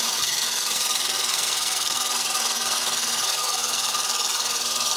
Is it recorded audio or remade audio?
remade